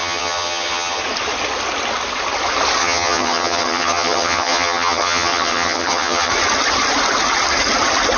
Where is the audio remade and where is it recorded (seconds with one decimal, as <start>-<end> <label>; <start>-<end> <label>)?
0.0-1.0 remade; 1.0-2.8 recorded; 2.8-6.3 remade; 6.3-8.2 recorded